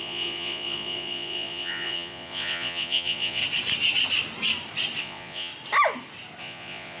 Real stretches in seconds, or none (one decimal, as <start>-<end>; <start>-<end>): 3.4-5.0; 5.5-6.4